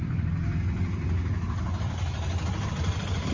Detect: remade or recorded recorded